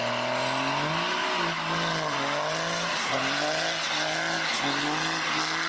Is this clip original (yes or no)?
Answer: yes